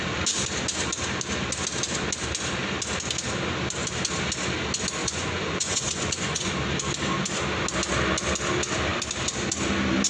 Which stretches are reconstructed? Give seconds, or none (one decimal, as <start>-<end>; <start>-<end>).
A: 5.0-6.5